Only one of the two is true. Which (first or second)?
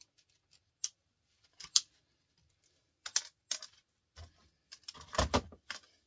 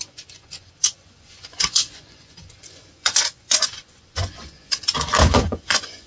first